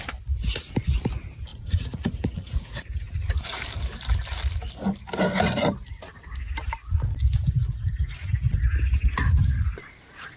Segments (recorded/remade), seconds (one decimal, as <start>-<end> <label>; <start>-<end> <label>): 0.0-1.5 recorded; 1.5-3.6 remade; 3.6-10.4 recorded